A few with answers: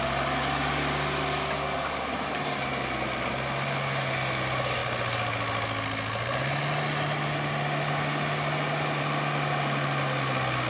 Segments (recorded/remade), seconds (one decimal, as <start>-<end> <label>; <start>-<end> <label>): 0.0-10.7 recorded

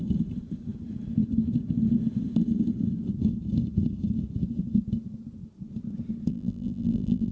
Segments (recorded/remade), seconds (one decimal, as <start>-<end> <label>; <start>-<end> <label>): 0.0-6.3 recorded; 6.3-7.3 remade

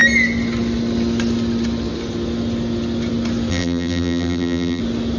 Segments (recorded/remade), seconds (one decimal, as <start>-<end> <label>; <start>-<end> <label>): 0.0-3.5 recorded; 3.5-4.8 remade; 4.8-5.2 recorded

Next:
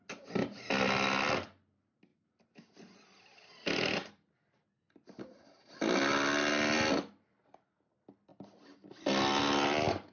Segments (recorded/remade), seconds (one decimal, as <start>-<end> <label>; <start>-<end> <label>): 0.0-10.1 recorded